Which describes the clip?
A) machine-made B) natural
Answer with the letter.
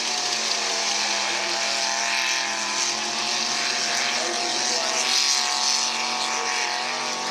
B